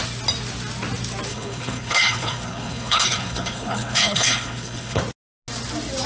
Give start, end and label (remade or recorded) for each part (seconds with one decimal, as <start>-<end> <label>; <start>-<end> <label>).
0.0-1.3 recorded; 1.3-5.0 remade; 5.0-6.1 recorded